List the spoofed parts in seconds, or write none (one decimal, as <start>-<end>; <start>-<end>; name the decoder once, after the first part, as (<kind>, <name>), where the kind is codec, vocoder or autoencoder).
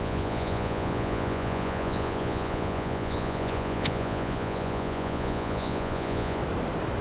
0.0-6.4 (vocoder, Vocos)